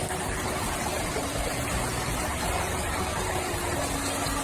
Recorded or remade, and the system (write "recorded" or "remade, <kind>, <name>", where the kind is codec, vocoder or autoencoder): recorded